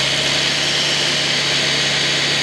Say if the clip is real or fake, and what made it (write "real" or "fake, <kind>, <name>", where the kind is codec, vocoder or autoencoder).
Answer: real